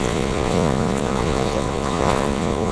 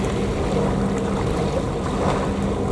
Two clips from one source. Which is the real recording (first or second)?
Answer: second